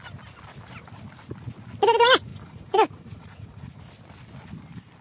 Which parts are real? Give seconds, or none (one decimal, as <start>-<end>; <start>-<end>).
0.0-2.3; 3.8-5.0